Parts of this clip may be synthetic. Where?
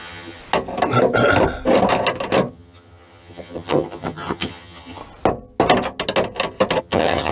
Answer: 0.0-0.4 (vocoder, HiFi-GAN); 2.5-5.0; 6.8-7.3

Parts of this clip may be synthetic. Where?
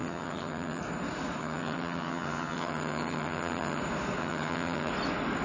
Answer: 0.0-0.8 (vocoder, HiFi-GAN); 1.4-3.8; 4.2-4.9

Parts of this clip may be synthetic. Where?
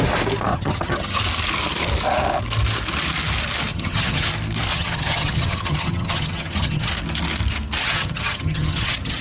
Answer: 0.5-1.2 (vocoder, HiFi-GAN); 3.7-4.3; 4.7-6.9; 7.8-9.2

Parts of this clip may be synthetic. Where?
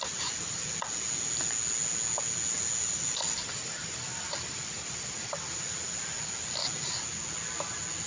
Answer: none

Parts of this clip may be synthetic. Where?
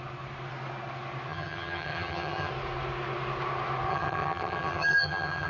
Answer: 1.3-2.5 (vocoder, HiFi-GAN); 3.9-5.5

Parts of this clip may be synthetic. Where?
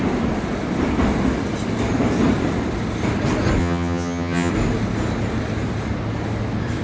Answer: 3.6-4.5 (vocoder, HiFi-GAN)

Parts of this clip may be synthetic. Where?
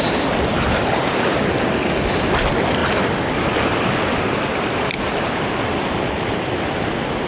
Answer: none